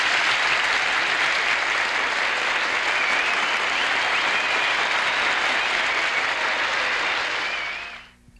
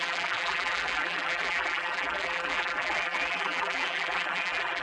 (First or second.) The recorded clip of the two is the first